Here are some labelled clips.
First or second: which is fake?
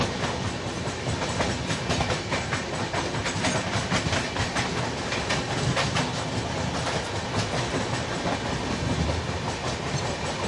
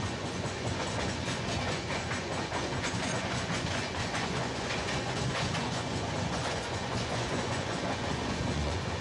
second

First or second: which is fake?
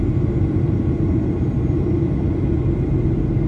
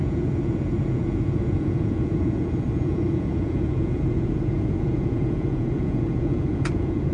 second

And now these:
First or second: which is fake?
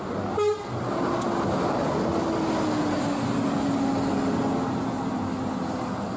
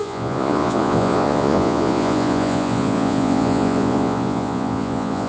second